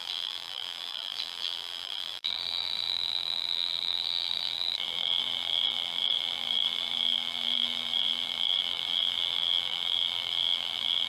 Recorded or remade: remade